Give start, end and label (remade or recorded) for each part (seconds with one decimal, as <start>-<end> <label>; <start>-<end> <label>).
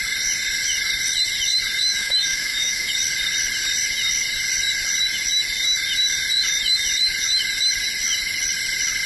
0.0-1.9 recorded; 1.9-2.9 remade; 2.9-9.1 recorded